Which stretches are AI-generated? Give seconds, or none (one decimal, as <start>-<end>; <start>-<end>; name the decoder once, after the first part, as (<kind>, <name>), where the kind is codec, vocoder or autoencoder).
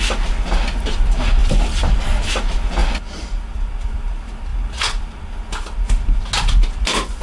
none